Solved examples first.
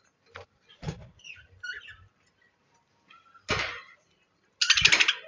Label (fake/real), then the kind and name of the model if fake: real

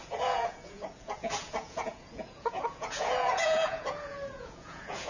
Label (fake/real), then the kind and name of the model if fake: fake, vocoder, Vocos